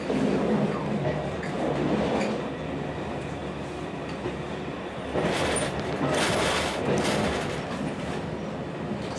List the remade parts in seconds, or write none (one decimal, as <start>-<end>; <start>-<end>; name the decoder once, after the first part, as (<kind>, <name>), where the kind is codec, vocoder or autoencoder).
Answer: 3.4-5.9 (vocoder, BigVGAN v2)